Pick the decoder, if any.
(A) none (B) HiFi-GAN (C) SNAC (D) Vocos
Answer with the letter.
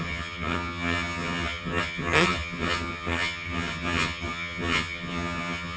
B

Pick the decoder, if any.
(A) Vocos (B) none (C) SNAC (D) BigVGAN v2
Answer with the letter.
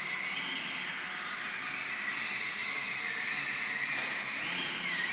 B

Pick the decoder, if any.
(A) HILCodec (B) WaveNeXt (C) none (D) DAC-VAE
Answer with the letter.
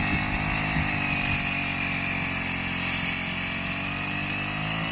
C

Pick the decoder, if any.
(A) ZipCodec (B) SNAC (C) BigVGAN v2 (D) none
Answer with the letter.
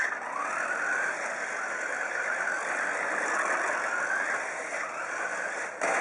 D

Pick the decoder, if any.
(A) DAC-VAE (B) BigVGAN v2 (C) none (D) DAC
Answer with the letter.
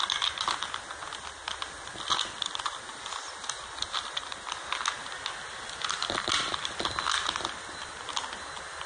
C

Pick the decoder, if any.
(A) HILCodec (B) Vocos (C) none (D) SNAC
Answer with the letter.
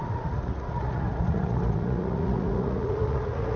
B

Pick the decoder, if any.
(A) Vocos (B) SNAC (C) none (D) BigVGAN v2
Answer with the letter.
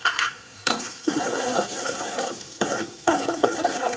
B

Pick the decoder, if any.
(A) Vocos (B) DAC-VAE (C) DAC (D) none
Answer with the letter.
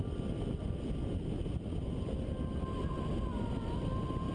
D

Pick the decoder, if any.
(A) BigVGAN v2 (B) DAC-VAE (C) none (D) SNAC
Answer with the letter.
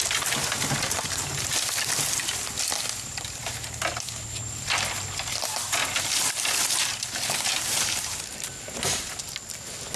C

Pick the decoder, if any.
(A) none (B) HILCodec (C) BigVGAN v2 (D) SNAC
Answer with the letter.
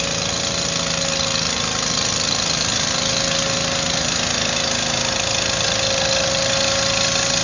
A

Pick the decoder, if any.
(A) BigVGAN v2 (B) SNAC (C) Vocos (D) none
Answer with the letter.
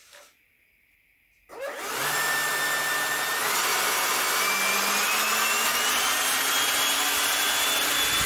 D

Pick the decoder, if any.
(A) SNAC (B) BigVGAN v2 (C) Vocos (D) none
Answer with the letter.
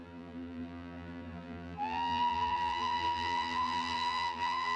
B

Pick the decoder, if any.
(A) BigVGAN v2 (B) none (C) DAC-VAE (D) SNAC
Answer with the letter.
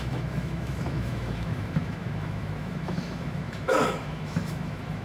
C